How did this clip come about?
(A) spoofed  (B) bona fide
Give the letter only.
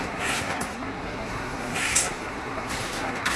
A